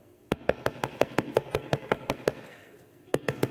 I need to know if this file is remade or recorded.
remade